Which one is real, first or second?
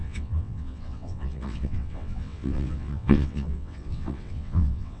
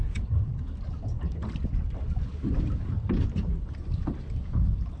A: second